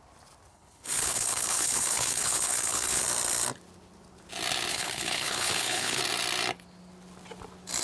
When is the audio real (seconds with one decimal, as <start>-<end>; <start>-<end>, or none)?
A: 0.0-0.5; 3.0-4.7; 6.0-7.8